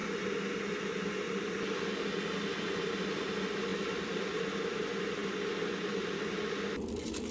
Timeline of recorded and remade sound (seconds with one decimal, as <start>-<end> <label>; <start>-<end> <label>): 0.0-7.3 recorded